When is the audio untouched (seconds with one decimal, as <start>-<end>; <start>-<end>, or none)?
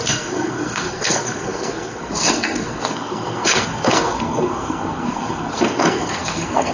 none